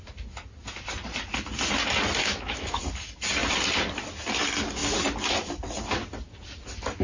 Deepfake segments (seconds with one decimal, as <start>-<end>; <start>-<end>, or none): 2.2-2.8